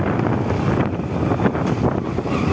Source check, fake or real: real